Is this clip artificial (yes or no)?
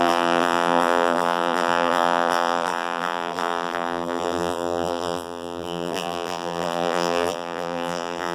yes